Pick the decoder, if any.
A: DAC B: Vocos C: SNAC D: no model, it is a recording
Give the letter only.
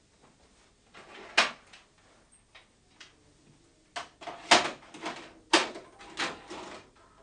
D